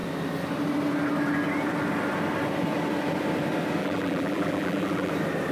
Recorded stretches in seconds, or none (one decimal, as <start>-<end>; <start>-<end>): 0.0-3.8; 5.1-5.5